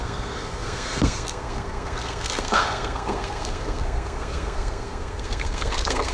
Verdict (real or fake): fake